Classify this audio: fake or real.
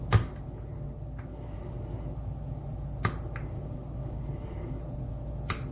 real